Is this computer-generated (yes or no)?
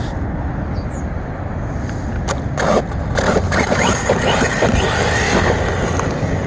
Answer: no